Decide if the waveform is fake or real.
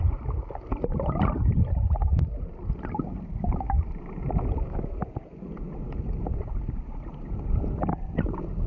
real